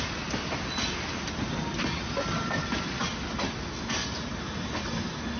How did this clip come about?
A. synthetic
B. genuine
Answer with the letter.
B